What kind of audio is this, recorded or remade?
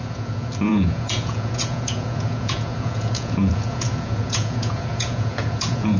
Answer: remade